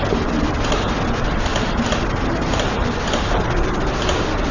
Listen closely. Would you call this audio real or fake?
real